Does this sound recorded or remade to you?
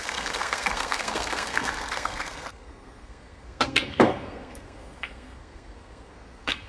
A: remade